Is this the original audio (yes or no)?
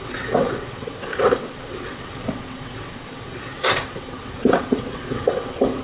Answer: no